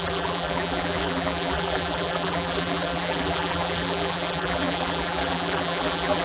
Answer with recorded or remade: remade